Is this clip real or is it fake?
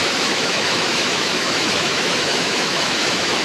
fake